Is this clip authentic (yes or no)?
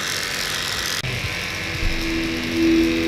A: yes